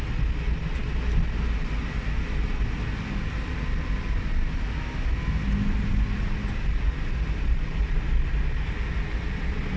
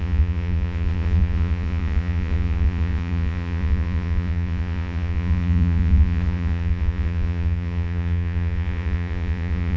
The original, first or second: first